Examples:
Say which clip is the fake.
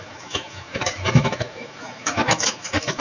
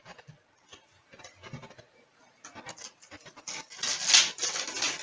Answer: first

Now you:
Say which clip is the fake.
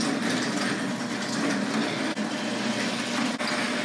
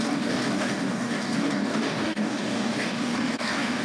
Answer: second